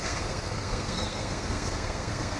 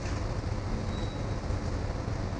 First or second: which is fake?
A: first